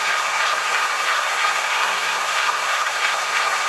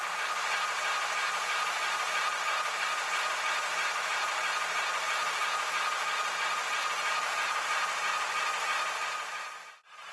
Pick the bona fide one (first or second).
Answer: second